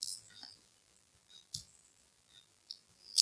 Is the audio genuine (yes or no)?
no